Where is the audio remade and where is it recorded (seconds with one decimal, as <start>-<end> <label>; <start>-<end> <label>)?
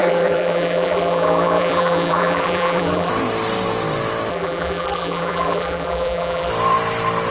0.0-3.1 remade; 3.1-4.3 recorded; 4.3-6.5 remade; 6.5-7.3 recorded